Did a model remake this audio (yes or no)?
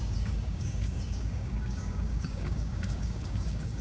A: yes